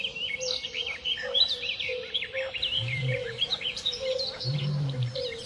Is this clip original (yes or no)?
no